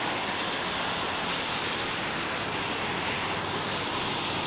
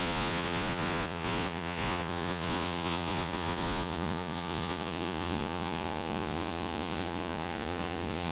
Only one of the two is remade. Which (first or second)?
second